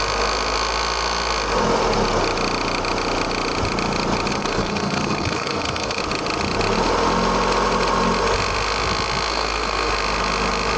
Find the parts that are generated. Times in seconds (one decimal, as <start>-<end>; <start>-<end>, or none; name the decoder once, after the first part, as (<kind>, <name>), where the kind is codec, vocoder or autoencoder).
4.3-6.0 (codec, SNAC); 9.3-9.9